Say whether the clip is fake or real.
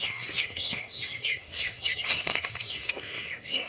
fake